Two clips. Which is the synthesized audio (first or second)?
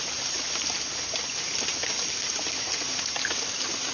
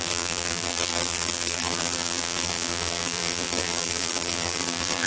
second